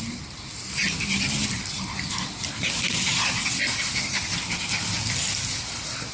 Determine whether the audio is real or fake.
real